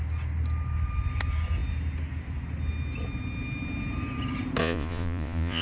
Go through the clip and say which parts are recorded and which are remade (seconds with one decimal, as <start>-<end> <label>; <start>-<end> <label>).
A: 0.0-4.6 recorded; 4.6-5.6 remade